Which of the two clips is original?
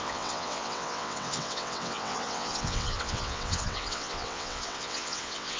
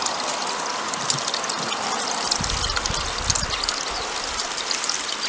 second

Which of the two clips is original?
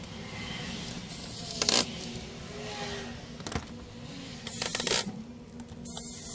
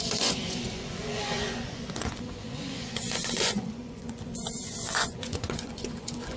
first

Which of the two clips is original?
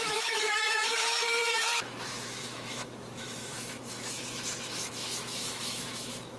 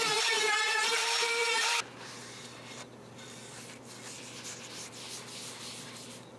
second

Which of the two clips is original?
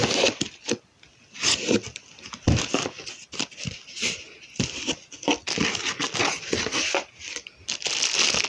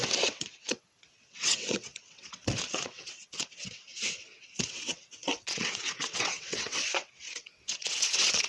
first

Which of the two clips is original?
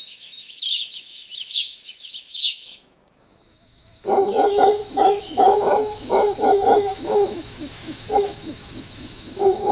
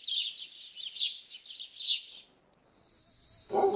second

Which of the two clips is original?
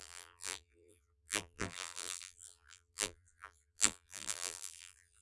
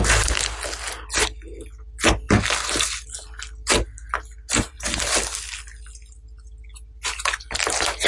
second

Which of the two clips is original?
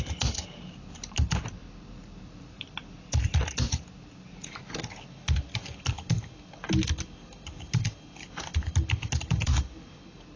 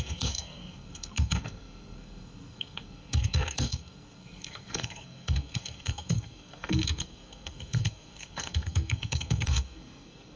first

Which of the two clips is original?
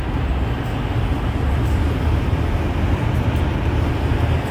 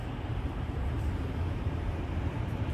first